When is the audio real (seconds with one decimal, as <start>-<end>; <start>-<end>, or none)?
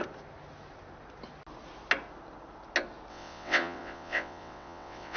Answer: 0.0-3.1